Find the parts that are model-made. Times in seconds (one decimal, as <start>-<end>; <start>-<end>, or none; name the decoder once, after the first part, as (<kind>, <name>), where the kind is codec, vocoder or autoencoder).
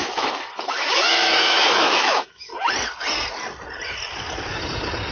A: 0.0-2.5 (autoencoder, DAC-VAE)